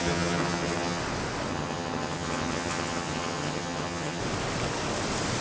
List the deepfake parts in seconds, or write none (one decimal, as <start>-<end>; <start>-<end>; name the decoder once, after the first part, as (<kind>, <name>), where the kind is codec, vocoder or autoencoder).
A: 0.0-1.0 (vocoder, HiFi-GAN); 1.5-4.2